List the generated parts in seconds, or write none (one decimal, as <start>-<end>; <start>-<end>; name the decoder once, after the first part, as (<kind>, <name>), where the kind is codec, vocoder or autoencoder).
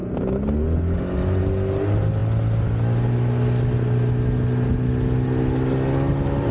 none